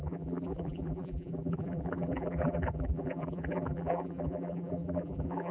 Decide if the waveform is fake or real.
fake